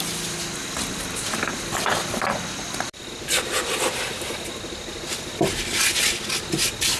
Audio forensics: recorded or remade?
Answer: recorded